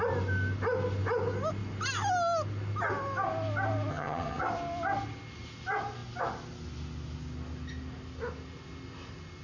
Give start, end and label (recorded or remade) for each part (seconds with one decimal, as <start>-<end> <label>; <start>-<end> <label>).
0.0-3.9 recorded; 3.9-4.4 remade; 4.4-9.4 recorded